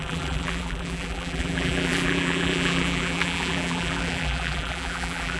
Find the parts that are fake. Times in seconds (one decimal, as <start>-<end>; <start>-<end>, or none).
0.0-5.4